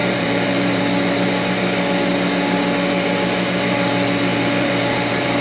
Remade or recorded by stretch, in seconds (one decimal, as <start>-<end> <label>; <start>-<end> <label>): 0.0-0.8 remade; 0.8-4.3 recorded; 4.3-5.4 remade